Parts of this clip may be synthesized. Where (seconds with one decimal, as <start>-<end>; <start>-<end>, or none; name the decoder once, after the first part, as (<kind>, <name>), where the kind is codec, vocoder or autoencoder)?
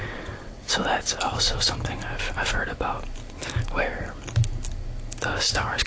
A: 0.0-0.7 (vocoder, WaveNeXt)